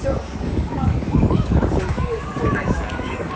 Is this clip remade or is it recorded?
remade